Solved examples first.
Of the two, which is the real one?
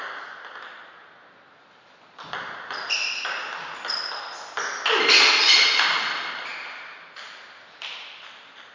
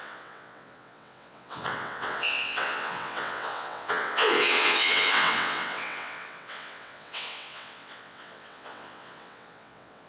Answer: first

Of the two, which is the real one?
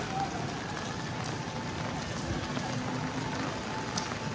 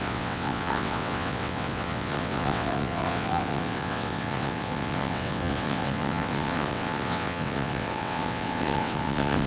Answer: first